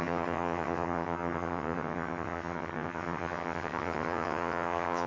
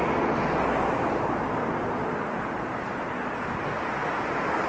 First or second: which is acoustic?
second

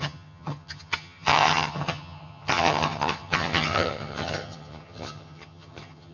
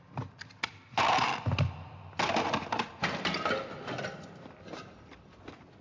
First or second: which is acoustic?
second